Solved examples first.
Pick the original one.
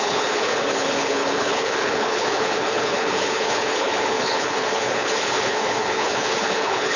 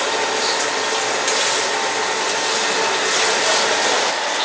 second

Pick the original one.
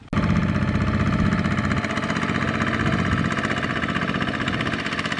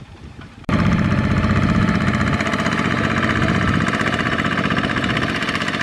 first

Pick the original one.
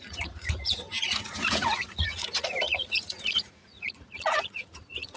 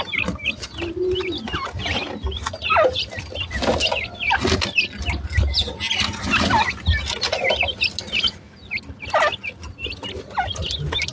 second